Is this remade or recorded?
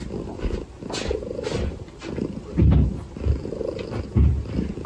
recorded